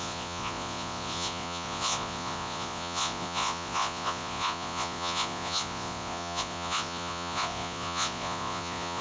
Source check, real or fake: fake